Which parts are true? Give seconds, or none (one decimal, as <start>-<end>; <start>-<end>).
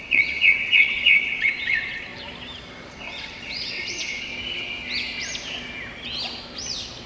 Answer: 2.1-2.9; 4.3-7.1